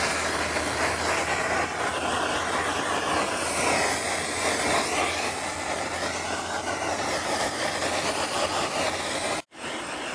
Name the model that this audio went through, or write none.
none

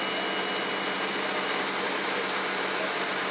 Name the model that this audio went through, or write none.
none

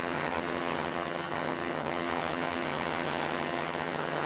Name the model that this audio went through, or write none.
vocoder, HiFi-GAN